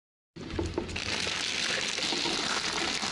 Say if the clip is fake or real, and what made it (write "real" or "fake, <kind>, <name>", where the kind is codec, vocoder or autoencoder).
real